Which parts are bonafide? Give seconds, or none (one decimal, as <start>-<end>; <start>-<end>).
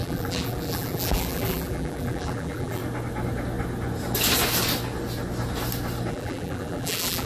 2.8-6.1